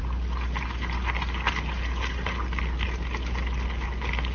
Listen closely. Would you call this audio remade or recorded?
recorded